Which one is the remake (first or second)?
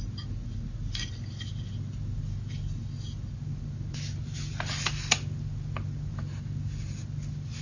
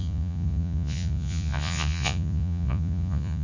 second